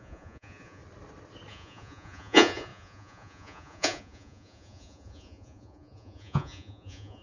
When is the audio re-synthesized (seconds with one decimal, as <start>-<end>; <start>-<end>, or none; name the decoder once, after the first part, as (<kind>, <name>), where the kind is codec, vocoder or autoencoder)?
0.0-0.8 (vocoder, Vocos); 1.5-7.2